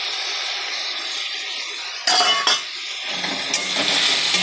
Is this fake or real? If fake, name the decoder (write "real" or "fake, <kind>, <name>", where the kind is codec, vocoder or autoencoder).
real